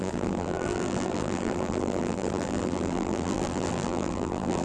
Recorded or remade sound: remade